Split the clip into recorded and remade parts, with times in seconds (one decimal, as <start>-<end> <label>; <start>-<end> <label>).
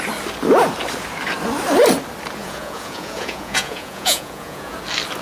0.0-2.4 recorded; 2.4-4.8 remade; 4.8-5.2 recorded